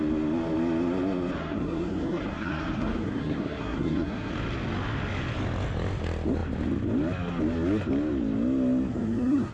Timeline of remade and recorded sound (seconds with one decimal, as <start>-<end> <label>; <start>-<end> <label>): 0.0-1.4 recorded; 1.4-4.3 remade; 4.3-8.9 recorded; 8.9-9.5 remade